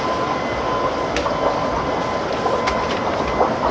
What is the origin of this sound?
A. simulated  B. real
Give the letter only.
B